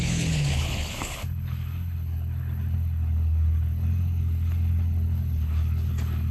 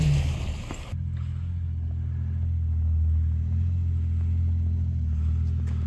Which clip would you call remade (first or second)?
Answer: first